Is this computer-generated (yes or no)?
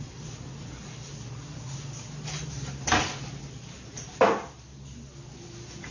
no